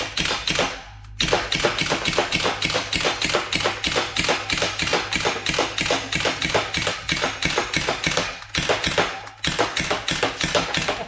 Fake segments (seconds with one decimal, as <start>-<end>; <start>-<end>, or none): none

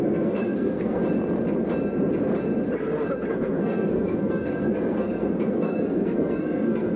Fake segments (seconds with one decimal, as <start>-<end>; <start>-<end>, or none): 0.0-1.0; 3.3-7.0

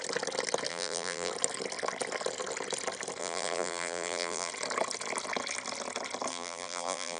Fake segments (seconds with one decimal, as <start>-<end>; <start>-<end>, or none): 0.7-1.3; 3.2-4.5; 6.3-7.2

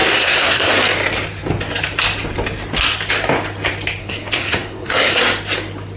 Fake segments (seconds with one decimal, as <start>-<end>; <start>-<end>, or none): 0.0-0.7; 4.0-5.2